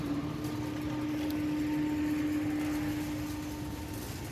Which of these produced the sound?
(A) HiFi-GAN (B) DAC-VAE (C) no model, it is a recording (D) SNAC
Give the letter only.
C